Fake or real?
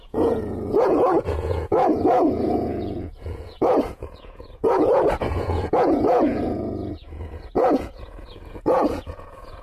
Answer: fake